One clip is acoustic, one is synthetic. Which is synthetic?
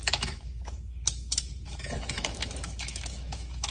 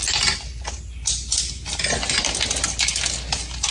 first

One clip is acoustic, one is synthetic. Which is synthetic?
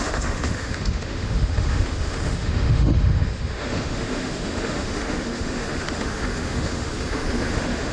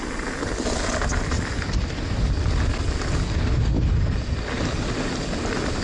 first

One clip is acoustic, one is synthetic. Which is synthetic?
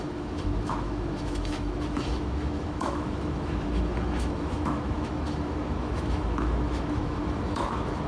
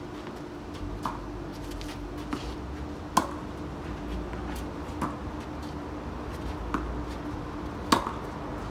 first